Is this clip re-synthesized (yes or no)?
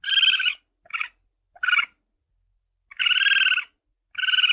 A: no